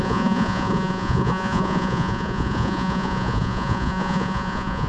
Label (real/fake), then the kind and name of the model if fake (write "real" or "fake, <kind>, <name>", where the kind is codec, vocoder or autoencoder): fake, vocoder, Vocos